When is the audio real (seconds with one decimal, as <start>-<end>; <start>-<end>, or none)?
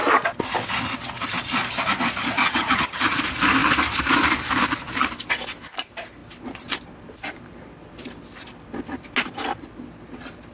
0.0-2.4; 3.2-10.5